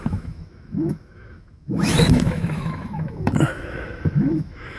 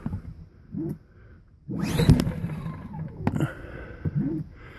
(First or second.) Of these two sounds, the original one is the second